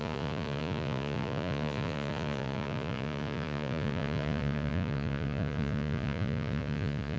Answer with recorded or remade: remade